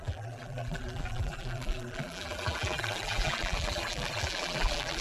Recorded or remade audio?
remade